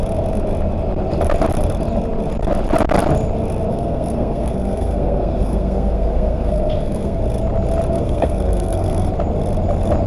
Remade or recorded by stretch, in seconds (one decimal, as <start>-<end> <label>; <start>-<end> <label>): 0.0-3.7 recorded; 3.7-7.2 remade; 7.2-7.9 recorded; 7.9-9.1 remade; 9.1-10.1 recorded